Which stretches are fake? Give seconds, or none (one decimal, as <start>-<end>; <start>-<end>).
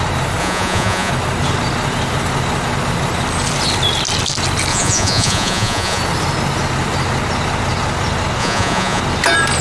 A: 0.4-1.1; 4.7-6.0; 8.4-9.0